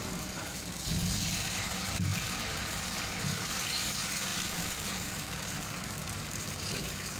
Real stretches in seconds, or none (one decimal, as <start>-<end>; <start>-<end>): none